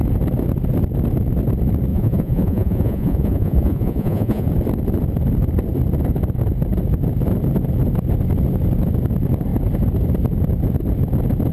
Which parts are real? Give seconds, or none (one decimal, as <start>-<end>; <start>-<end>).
0.0-1.9; 4.5-11.5